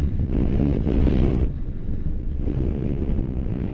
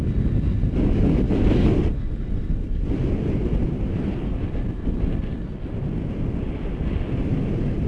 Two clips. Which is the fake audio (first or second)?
first